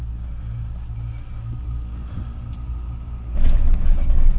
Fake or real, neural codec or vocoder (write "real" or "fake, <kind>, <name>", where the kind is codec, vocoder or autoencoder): real